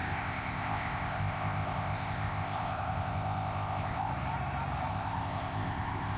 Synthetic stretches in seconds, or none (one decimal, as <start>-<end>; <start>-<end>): 0.0-4.1; 4.9-6.2

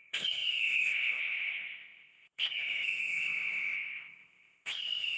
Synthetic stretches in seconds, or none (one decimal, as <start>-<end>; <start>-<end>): 0.0-5.2

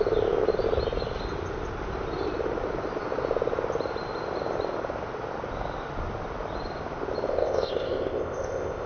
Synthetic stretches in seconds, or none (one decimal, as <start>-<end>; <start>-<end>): 7.3-8.9

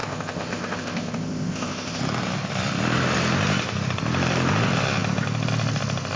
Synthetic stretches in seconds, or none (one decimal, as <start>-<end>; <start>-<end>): 0.0-2.0

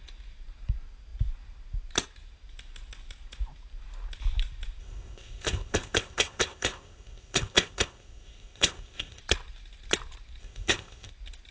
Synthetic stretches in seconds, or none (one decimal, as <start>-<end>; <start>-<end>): 4.8-9.2; 10.4-11.1

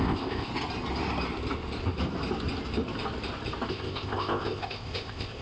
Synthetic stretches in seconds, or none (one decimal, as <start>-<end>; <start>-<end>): 0.0-0.5; 3.7-5.4

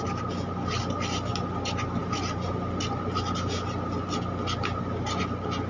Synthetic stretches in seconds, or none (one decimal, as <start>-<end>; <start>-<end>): none